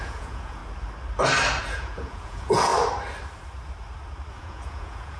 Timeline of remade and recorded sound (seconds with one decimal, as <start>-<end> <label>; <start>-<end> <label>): 0.0-0.6 remade; 0.6-1.6 recorded; 1.6-2.7 remade; 2.7-4.3 recorded; 4.3-5.2 remade